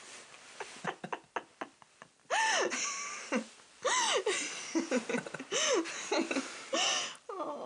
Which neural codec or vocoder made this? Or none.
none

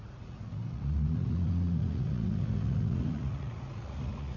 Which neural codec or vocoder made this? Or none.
vocoder, Vocos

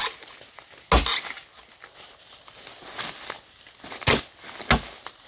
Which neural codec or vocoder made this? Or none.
none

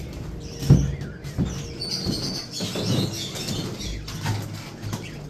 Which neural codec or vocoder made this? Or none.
none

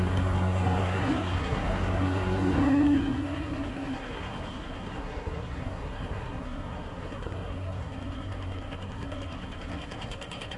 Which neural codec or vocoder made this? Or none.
codec, SNAC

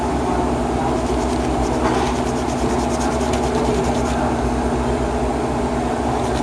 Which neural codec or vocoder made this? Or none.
none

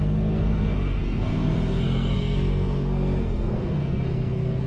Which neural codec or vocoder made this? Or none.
codec, SNAC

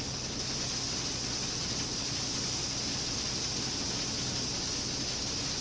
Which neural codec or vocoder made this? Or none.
none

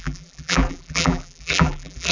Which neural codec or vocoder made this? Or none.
vocoder, BigVGAN v2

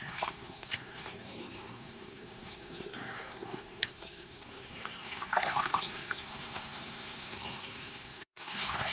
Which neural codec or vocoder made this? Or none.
codec, SNAC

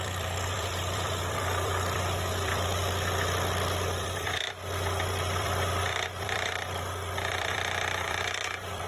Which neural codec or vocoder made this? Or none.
vocoder, BigVGAN v2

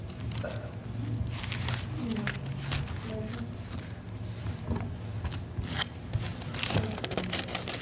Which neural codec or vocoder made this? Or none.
none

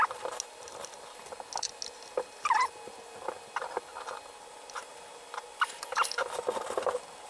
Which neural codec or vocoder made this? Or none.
none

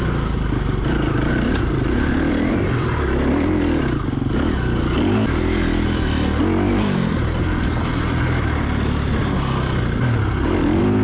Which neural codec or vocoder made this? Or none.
none